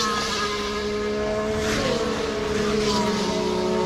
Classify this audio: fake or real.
real